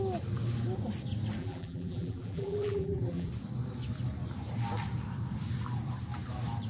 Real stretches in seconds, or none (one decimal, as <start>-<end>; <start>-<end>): 0.0-1.4; 3.3-6.7